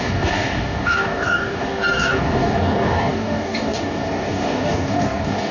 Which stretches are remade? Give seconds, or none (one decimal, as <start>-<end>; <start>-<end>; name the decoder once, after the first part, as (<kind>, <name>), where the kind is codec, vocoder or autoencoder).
0.0-5.5 (codec, DAC)